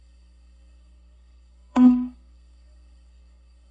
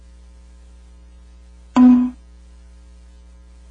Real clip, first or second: second